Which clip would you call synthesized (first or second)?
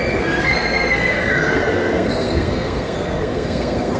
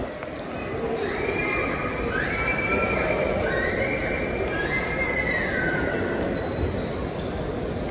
first